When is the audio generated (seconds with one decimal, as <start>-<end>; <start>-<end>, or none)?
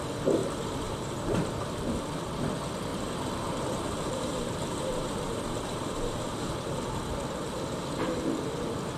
0.4-2.5; 2.9-6.7